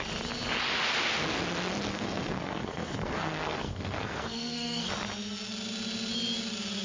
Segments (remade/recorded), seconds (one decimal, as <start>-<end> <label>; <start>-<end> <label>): 0.0-1.9 recorded; 1.9-4.9 remade; 4.9-6.8 recorded